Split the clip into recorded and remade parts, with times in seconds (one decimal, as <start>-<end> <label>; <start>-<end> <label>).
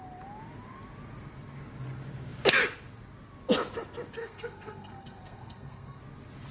0.0-4.2 recorded; 4.2-6.0 remade; 6.0-6.5 recorded